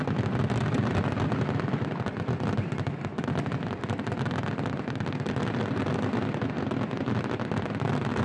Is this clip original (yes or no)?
yes